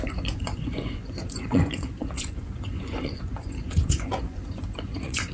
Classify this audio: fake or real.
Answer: fake